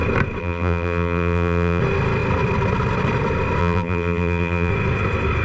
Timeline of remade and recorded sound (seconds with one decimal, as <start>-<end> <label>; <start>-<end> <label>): 0.0-0.4 recorded; 0.4-1.8 remade; 1.8-3.6 recorded; 3.6-4.7 remade; 4.7-5.4 recorded